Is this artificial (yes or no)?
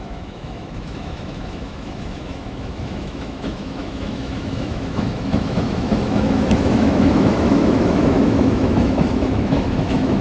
yes